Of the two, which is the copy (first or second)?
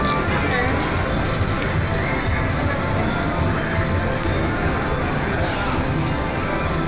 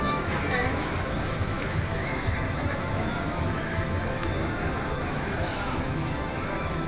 second